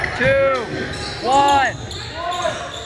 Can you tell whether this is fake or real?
real